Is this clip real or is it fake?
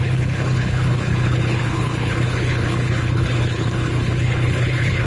fake